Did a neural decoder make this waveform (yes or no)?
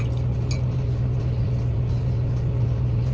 no